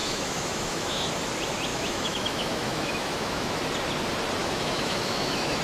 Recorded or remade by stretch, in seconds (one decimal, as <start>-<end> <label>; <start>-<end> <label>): 0.0-1.1 remade; 1.1-1.7 recorded; 1.7-3.6 remade; 3.6-4.4 recorded; 4.4-5.6 remade